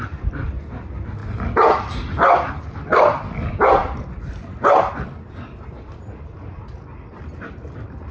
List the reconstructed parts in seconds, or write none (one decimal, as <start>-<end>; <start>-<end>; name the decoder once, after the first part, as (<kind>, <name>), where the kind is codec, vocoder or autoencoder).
none